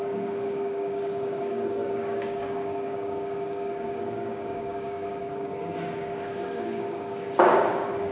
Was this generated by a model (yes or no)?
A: yes